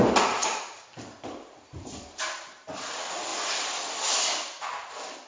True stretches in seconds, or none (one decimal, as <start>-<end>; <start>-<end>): 0.0-0.4; 2.1-4.8